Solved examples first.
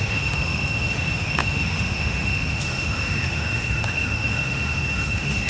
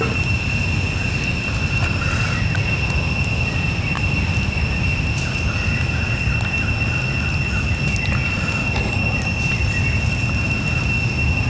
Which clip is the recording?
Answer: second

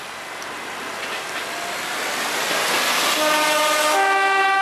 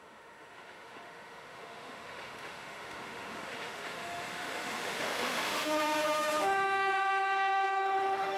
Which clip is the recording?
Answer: first